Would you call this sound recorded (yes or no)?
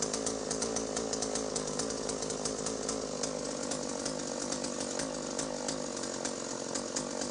yes